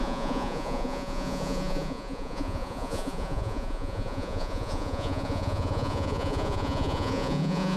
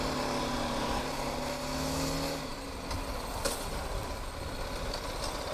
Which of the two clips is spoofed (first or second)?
first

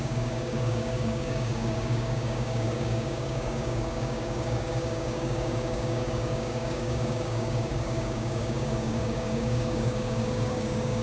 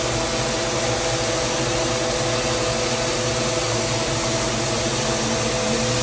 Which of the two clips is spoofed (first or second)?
first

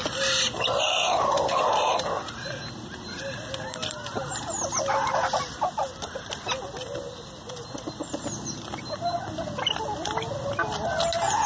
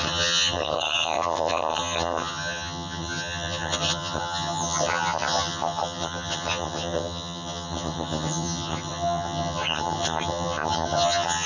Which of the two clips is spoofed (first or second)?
second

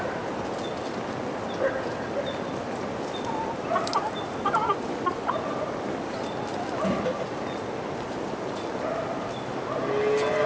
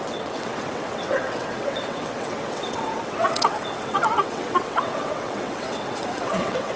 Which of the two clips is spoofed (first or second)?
second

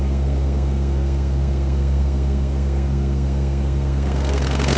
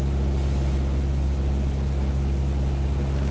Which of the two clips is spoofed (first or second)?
first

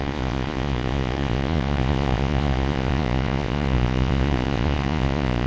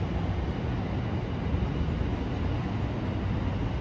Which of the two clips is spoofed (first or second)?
first